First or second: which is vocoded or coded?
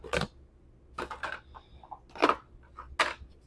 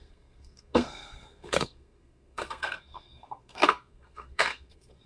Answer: second